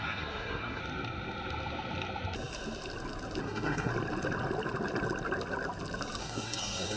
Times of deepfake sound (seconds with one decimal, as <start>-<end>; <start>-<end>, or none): 0.0-0.8; 3.4-3.9; 6.2-7.0